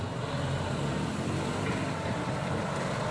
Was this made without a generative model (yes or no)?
yes